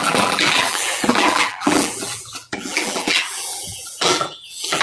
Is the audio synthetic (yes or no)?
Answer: yes